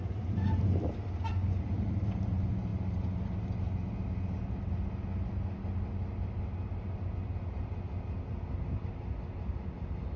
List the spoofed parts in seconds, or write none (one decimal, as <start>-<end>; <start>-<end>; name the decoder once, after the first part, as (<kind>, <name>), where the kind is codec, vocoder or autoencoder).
1.2-2.0 (vocoder, BigVGAN v2)